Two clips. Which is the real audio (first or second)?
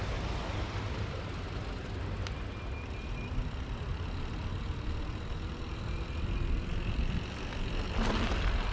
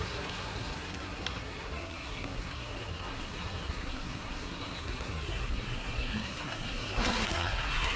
first